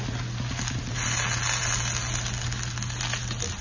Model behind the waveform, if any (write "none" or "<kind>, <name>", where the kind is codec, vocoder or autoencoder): none